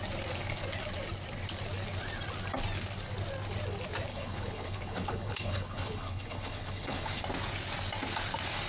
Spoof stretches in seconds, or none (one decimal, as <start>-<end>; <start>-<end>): 4.1-7.2